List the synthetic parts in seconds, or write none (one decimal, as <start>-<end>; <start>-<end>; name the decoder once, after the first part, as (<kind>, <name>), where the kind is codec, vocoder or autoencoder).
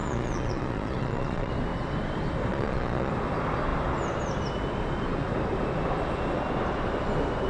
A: 0.0-1.5 (vocoder, Vocos); 2.5-3.1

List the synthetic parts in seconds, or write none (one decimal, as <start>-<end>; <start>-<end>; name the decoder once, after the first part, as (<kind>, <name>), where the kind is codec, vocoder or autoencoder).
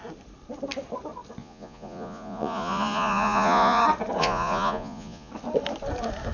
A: 1.4-3.8 (vocoder, Vocos); 4.2-5.3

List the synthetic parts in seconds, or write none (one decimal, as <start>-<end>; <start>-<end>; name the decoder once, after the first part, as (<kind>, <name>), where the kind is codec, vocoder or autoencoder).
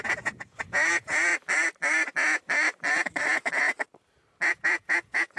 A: 0.0-1.3 (vocoder, Vocos); 4.5-5.4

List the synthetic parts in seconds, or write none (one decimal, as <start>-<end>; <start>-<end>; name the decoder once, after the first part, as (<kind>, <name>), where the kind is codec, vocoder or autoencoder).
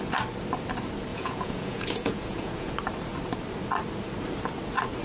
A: 1.1-2.7 (vocoder, Vocos)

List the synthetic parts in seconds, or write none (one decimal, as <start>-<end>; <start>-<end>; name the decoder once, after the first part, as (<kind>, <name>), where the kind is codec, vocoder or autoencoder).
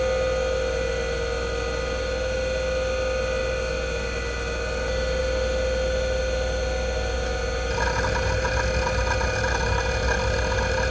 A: none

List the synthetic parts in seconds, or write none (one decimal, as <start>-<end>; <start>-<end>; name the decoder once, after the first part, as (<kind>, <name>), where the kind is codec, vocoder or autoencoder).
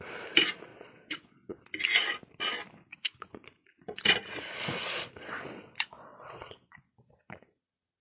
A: 0.7-1.7 (vocoder, Vocos); 2.9-8.0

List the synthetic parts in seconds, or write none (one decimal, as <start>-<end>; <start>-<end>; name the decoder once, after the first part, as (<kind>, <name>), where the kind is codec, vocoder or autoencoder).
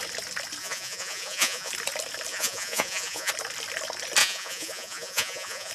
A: 0.6-1.7 (vocoder, Vocos); 2.3-3.3; 4.2-5.7